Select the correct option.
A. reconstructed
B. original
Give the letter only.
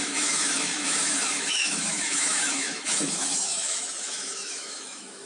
A